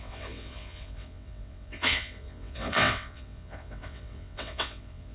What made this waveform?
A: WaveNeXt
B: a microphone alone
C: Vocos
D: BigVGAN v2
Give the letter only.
A